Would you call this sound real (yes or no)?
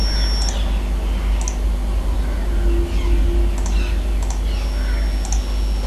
yes